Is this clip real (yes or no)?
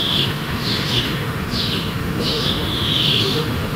no